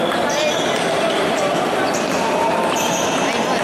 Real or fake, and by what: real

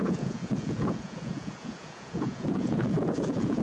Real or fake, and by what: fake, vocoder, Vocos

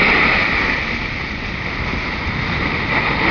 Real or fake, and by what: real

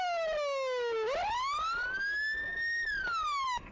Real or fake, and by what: real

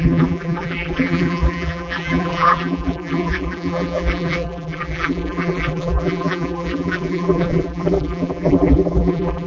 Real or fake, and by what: fake, vocoder, BigVGAN v2